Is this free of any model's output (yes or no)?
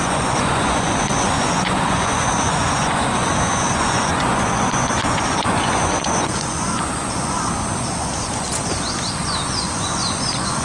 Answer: no